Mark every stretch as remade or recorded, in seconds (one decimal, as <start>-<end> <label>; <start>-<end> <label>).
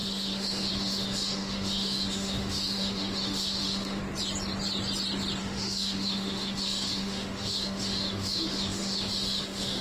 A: 0.0-4.0 remade; 4.0-5.4 recorded; 5.4-9.8 remade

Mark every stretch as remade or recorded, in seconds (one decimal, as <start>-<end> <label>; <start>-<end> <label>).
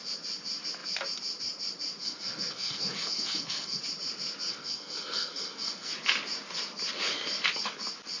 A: 0.0-2.0 recorded; 2.0-3.8 remade; 3.8-4.5 recorded; 4.5-5.9 remade; 5.9-8.2 recorded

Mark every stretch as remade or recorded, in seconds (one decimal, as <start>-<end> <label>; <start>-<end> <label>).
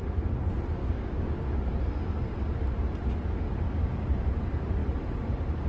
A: 0.0-0.8 recorded; 0.8-1.6 remade; 1.6-5.7 recorded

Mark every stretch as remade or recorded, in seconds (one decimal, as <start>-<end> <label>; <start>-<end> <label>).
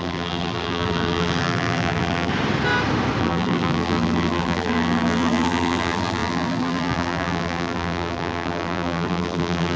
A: 0.0-2.3 remade; 2.3-3.2 recorded; 3.2-9.8 remade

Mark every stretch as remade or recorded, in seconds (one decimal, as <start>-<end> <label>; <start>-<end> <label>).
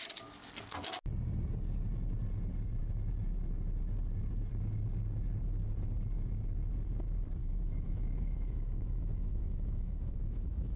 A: 0.0-7.4 recorded; 7.4-10.8 remade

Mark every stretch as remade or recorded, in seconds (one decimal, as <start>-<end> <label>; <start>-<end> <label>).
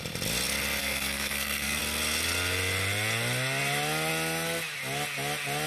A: 0.0-0.8 recorded; 0.8-1.8 remade; 1.8-5.7 recorded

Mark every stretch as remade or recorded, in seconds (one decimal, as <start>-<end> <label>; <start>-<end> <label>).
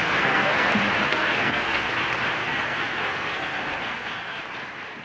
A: 0.0-0.7 remade; 0.7-1.1 recorded; 1.1-1.9 remade; 1.9-2.4 recorded; 2.4-4.4 remade; 4.4-5.0 recorded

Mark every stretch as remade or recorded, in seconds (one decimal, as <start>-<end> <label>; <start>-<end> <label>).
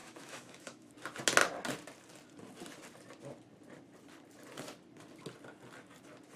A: 0.0-0.9 remade; 0.9-6.4 recorded